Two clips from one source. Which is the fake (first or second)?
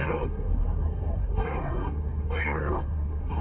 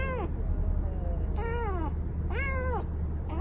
first